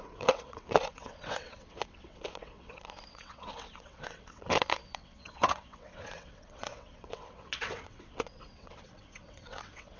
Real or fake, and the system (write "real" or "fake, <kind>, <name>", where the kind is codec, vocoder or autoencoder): fake, vocoder, WaveNeXt